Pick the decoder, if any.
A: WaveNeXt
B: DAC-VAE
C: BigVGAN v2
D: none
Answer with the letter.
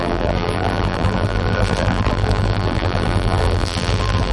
C